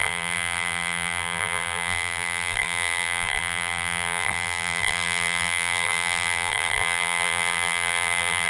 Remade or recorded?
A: remade